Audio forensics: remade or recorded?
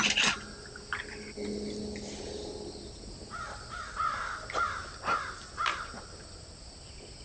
recorded